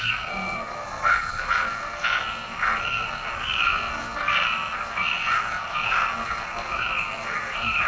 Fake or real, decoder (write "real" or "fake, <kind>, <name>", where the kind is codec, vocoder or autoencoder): fake, codec, SNAC